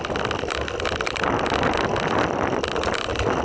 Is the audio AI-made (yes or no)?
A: no